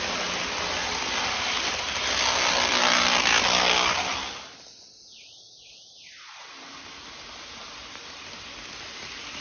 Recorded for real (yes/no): yes